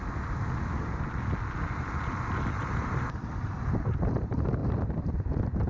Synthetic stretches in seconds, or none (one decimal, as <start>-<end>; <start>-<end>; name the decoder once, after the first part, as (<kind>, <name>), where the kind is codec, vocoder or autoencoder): 2.6-4.1 (vocoder, BigVGAN v2); 4.6-5.7